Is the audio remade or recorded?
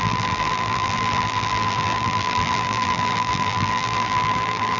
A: remade